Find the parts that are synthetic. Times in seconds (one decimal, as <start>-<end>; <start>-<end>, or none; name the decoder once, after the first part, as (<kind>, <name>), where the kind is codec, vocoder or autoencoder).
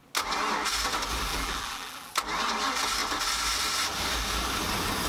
1.3-2.1 (vocoder, BigVGAN v2)